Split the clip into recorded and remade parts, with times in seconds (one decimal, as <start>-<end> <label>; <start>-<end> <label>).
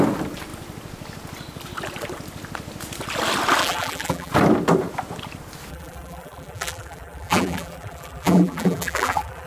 0.0-3.6 recorded; 3.6-4.3 remade; 4.3-5.7 recorded; 5.7-9.5 remade